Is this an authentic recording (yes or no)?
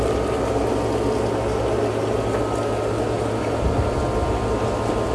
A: yes